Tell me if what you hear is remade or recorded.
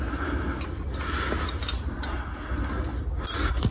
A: recorded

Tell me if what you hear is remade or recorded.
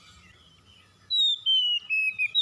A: recorded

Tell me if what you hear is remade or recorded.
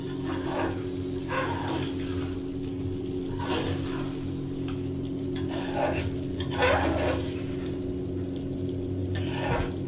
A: recorded